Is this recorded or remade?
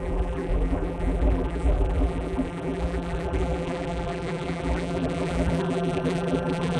remade